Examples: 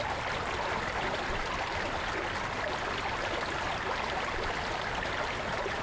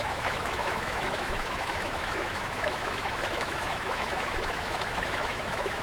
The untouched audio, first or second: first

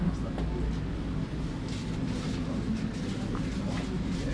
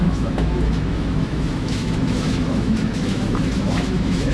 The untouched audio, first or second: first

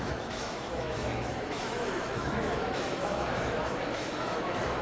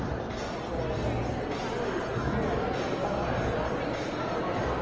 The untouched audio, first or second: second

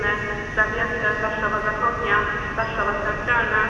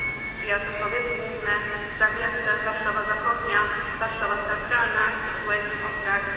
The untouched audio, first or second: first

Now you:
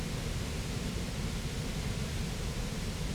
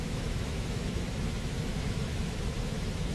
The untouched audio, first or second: first